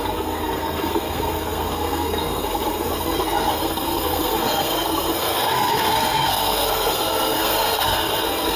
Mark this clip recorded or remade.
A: remade